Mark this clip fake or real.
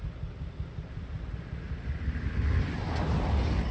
real